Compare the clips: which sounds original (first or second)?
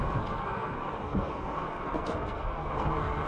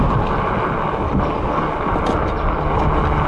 second